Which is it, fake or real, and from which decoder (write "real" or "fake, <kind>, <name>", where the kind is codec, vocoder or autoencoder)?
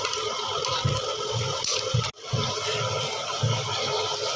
real